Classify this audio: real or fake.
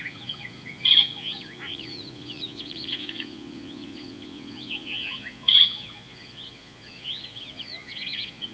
fake